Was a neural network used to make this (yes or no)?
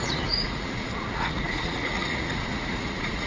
yes